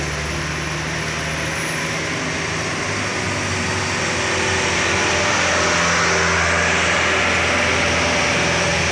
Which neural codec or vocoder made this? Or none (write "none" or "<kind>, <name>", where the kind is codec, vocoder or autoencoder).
none